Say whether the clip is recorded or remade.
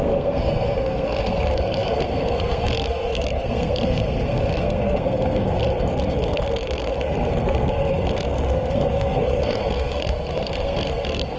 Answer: remade